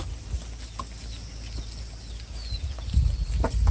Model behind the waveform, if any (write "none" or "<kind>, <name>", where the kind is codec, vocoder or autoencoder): none